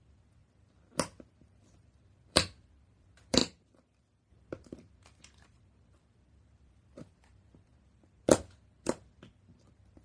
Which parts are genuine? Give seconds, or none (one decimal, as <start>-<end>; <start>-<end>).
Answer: 0.4-1.6; 3.4-4.3